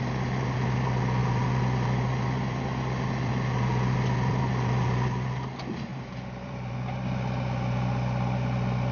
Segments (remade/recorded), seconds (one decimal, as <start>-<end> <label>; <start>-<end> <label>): 0.0-5.9 recorded; 5.9-6.7 remade; 6.7-8.9 recorded